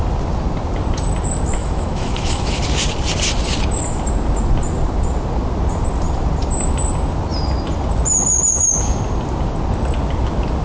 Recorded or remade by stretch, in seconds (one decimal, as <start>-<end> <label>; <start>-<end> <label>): 0.0-1.6 recorded; 1.6-2.6 remade; 2.6-10.6 recorded